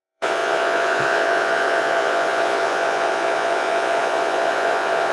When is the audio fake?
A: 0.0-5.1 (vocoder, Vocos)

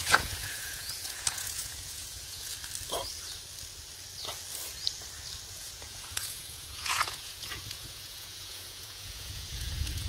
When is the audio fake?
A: 0.0-2.5 (vocoder, Vocos); 5.5-10.1

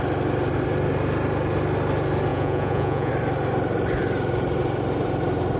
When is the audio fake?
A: 2.3-3.1 (vocoder, Vocos)